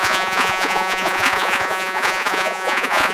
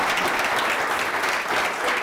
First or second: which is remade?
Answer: first